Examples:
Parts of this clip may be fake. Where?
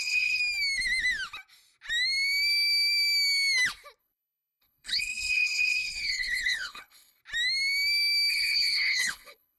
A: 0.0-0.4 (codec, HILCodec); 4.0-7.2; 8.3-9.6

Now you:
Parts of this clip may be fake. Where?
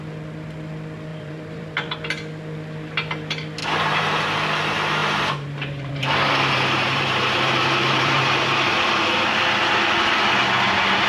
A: 1.1-1.9 (vocoder, BigVGAN v2); 3.6-4.2; 5.0-8.7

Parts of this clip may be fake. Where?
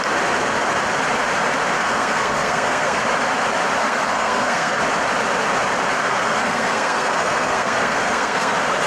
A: 1.8-3.0 (codec, SNAC); 3.8-4.8; 6.0-8.5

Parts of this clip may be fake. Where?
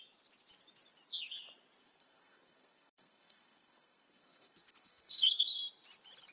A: 1.8-5.6 (codec, SNAC)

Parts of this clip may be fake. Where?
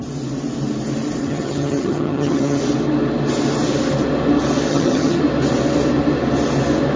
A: 1.2-2.6 (vocoder, HiFi-GAN); 4.7-5.2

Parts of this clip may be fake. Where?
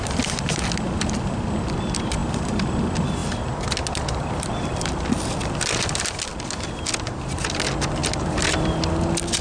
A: 2.2-2.8 (vocoder, BigVGAN v2)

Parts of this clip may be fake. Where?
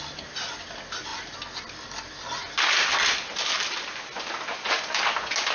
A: none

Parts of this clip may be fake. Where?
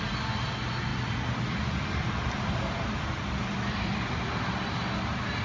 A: 0.9-4.1 (vocoder, BigVGAN v2)